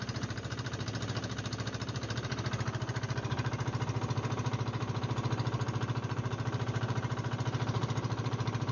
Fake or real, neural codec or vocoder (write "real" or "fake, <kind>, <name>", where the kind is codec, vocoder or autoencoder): fake, vocoder, BigVGAN v2